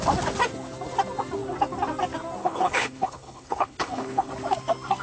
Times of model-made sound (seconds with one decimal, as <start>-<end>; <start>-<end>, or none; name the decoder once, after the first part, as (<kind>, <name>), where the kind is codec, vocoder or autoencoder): 2.4-4.3 (codec, HILCodec)